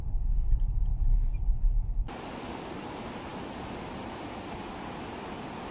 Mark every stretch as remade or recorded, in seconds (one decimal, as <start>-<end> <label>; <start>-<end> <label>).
0.0-0.9 remade; 0.9-2.0 recorded; 2.0-3.3 remade; 3.3-5.7 recorded